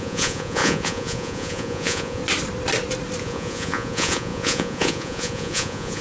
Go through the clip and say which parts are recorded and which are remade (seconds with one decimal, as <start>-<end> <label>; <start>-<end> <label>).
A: 0.0-2.2 remade; 2.2-3.2 recorded; 3.2-6.0 remade